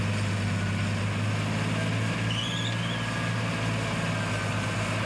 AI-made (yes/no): no